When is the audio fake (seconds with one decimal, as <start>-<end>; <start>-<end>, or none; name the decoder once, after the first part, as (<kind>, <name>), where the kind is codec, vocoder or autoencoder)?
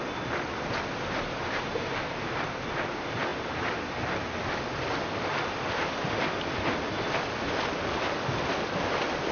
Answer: none